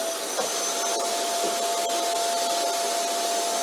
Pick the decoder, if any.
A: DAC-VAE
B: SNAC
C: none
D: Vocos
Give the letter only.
C